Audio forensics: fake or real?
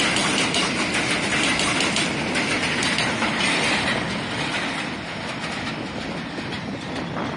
real